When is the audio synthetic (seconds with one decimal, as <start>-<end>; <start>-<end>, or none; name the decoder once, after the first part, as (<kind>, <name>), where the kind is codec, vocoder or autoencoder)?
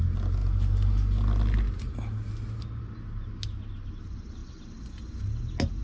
none